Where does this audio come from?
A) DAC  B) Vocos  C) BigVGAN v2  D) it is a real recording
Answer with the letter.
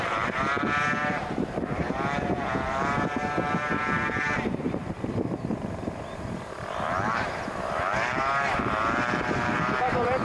C